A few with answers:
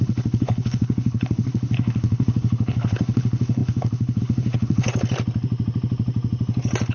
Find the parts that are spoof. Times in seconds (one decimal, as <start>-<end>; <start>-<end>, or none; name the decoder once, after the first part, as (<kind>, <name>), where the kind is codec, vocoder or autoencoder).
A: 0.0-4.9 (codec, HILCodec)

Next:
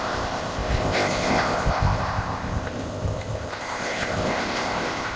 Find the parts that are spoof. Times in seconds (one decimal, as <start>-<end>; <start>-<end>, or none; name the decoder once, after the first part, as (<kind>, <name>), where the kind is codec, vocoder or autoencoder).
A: 0.0-5.2 (codec, ZipCodec)

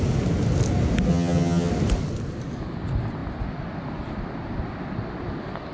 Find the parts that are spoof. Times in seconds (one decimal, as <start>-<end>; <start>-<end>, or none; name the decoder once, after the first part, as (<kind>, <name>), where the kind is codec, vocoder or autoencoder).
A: 1.1-1.7 (vocoder, HiFi-GAN)